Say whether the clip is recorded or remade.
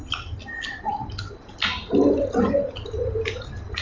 recorded